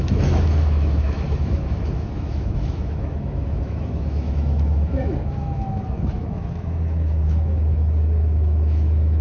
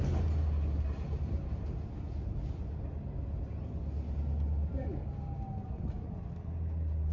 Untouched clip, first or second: second